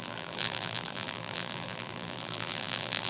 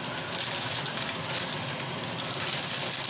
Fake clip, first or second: first